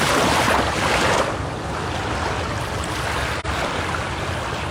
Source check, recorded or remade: recorded